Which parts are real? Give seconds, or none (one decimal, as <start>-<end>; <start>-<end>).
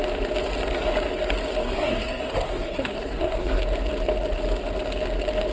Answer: 0.0-1.6; 3.6-5.5